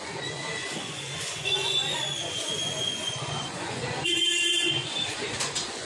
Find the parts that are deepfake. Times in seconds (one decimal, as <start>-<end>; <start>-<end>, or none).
0.0-5.9